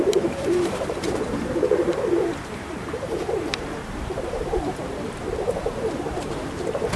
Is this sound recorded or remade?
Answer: remade